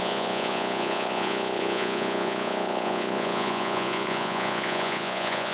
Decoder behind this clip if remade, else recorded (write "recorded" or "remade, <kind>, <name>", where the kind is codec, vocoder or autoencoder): remade, vocoder, Vocos